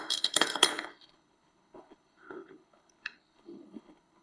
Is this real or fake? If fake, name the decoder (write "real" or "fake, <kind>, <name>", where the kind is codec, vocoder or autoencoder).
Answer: fake, codec, HILCodec